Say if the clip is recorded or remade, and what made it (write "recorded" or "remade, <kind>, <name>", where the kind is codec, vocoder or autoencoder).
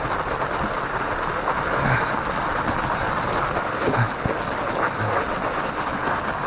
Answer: recorded